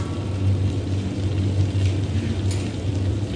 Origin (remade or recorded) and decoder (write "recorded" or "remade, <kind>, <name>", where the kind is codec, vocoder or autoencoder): recorded